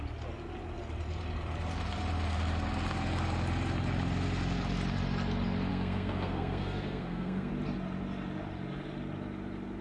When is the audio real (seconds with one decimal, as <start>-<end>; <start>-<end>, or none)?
0.0-5.7; 7.5-9.8